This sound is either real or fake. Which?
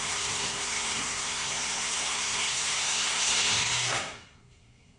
fake